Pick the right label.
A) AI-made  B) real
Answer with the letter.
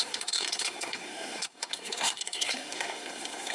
A